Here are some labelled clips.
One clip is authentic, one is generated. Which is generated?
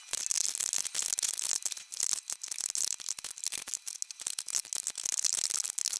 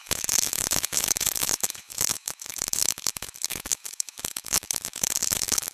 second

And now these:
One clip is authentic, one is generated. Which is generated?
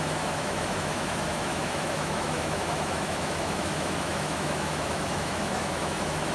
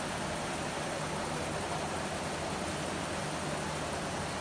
first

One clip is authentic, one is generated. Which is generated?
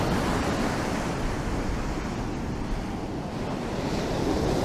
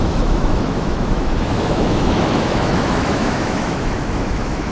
second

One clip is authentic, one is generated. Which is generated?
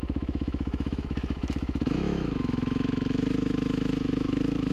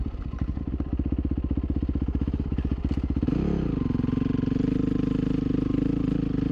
first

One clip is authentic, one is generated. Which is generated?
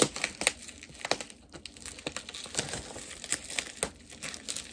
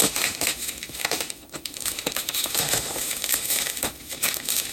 second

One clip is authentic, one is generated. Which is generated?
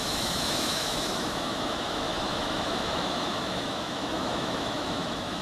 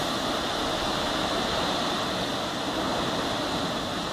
first